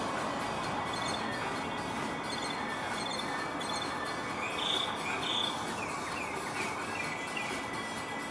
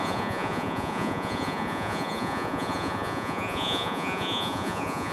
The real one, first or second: first